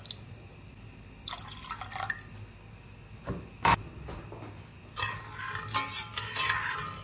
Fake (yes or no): no